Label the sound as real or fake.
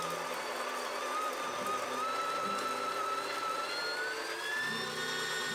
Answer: real